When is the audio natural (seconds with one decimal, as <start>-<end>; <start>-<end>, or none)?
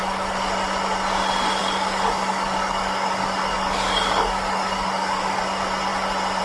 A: 0.0-1.6; 5.4-6.4